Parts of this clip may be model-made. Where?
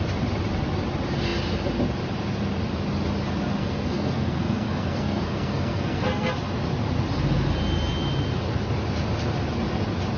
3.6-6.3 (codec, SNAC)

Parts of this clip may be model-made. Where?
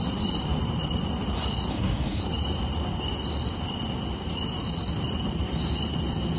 1.7-2.2 (codec, SNAC)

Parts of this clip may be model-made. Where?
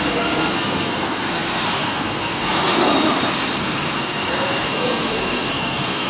0.0-2.9 (codec, SNAC); 3.6-6.1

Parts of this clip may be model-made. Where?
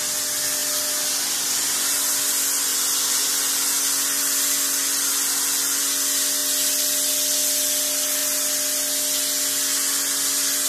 none